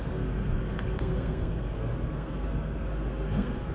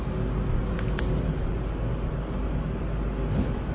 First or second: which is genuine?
second